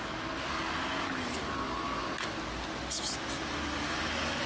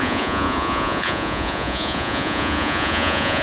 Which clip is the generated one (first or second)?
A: second